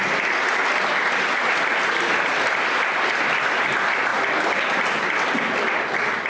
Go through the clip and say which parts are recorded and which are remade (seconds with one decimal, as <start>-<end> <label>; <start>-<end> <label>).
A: 0.0-6.3 recorded